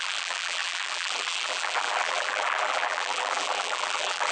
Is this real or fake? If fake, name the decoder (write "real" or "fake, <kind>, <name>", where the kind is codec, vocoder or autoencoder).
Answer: fake, vocoder, BigVGAN v2